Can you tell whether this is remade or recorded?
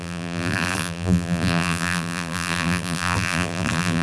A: remade